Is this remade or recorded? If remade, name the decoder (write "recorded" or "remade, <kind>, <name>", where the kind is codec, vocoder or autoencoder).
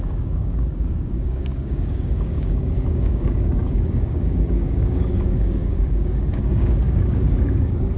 remade, codec, DAC